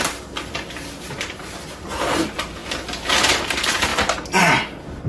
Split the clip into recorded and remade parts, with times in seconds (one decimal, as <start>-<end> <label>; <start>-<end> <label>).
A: 0.0-2.6 remade; 2.6-3.2 recorded; 3.2-5.1 remade